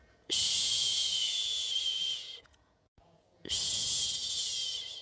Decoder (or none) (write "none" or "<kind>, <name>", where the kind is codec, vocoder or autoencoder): vocoder, Vocos